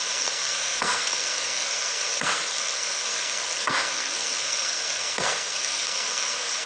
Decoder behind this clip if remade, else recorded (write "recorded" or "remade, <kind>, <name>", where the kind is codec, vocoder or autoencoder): remade, codec, SNAC